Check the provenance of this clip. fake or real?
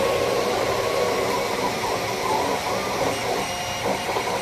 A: real